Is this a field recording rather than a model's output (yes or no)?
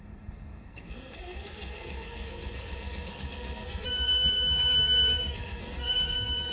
no